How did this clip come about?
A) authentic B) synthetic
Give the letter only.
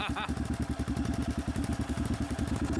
A